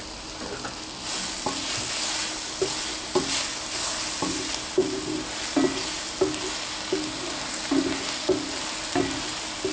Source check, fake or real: real